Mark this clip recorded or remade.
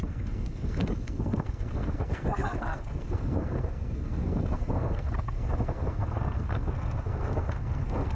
remade